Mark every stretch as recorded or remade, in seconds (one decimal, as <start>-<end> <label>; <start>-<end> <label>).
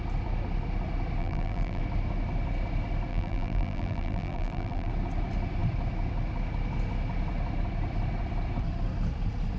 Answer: 0.0-1.2 recorded; 1.2-1.8 remade; 1.8-3.1 recorded; 3.1-4.9 remade; 4.9-9.6 recorded